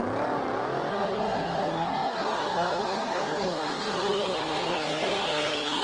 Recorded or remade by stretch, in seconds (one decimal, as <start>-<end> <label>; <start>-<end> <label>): 0.0-0.9 recorded; 0.9-5.8 remade